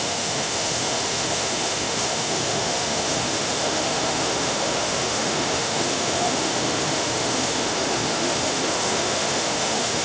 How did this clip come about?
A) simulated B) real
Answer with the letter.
A